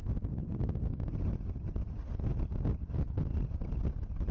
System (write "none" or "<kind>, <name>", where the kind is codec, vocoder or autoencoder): none